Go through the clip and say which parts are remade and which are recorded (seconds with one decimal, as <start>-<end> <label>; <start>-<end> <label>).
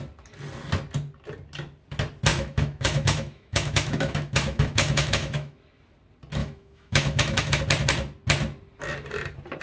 0.0-2.3 recorded; 2.3-5.6 remade; 5.6-6.4 recorded; 6.4-7.6 remade; 7.6-9.6 recorded